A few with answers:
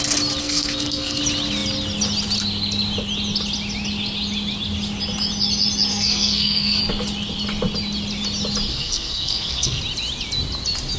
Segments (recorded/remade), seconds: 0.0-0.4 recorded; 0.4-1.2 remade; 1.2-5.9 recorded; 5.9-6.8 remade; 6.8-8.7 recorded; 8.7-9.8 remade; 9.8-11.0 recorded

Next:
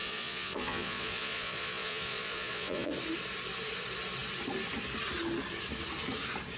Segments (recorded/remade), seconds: 0.0-2.9 remade; 2.9-6.6 recorded

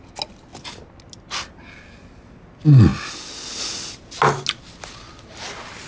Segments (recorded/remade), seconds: 0.0-5.9 recorded

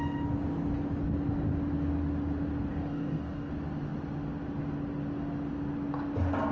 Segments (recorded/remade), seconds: 0.0-2.7 recorded; 2.7-3.5 remade; 3.5-6.5 recorded